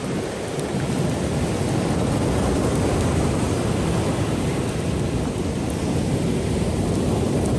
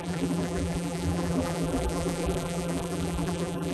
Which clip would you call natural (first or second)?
first